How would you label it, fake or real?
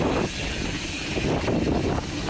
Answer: real